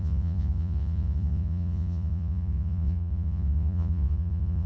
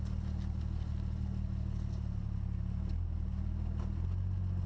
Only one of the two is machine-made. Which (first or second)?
first